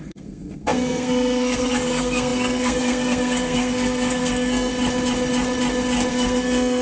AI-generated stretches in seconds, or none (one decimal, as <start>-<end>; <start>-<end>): 0.0-4.7; 6.1-6.8